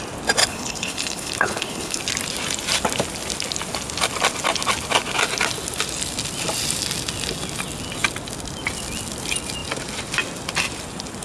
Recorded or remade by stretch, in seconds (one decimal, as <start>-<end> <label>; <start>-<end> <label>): 0.0-0.4 recorded; 0.4-2.0 remade; 2.0-11.2 recorded